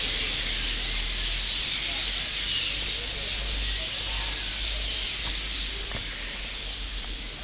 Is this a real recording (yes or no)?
yes